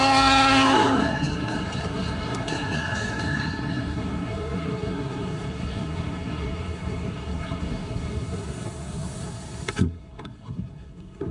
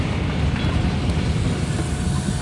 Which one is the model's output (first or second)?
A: first